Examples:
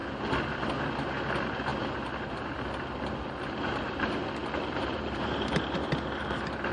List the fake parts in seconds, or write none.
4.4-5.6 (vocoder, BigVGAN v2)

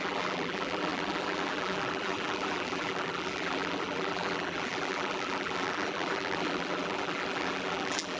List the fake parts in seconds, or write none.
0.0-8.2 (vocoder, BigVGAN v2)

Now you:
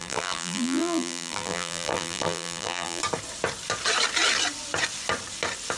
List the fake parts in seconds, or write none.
0.0-3.0 (vocoder, BigVGAN v2)

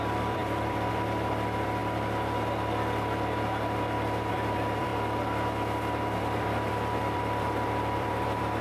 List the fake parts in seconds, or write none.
0.0-1.8 (vocoder, BigVGAN v2); 4.3-4.9; 6.2-8.6